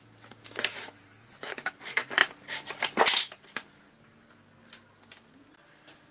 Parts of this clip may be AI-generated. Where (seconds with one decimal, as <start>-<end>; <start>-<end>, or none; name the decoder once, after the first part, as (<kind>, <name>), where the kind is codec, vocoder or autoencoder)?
0.7-1.7 (codec, DAC)